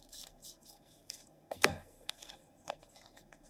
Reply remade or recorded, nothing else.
remade